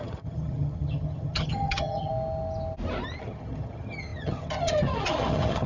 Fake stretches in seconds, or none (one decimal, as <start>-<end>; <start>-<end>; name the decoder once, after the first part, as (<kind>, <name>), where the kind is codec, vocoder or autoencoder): 0.0-2.1 (vocoder, HiFi-GAN); 3.2-5.7